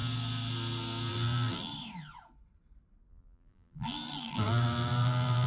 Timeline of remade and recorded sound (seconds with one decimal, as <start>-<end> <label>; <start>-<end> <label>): 0.0-1.1 recorded; 1.1-1.7 remade; 1.7-3.1 recorded; 3.1-5.5 remade